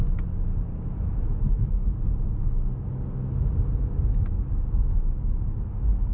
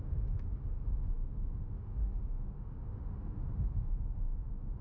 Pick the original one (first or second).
first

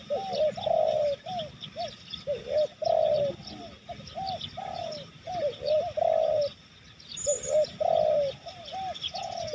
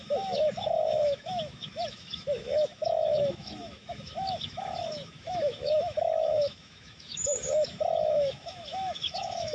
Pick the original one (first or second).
first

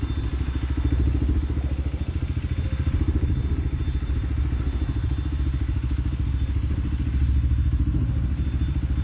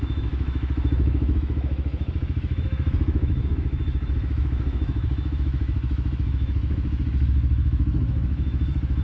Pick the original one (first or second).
first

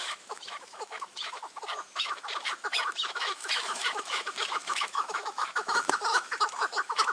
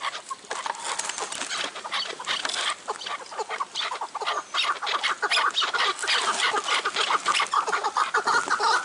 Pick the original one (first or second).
second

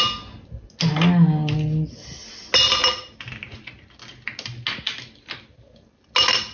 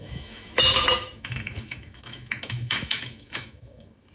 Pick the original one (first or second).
first